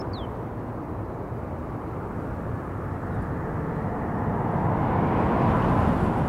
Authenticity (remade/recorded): recorded